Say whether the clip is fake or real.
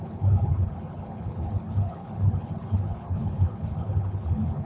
fake